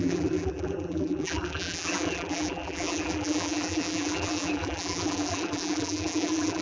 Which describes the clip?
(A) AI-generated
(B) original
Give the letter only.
A